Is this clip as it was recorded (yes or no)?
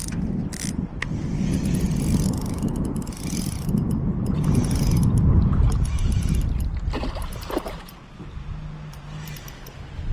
yes